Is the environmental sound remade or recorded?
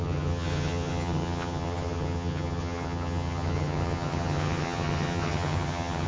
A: remade